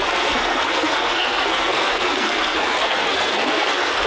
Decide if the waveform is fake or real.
fake